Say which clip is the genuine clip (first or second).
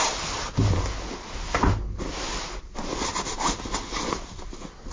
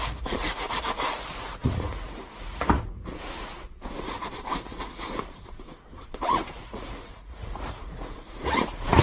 first